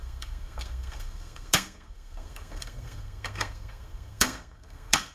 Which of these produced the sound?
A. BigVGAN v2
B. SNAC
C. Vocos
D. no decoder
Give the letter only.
B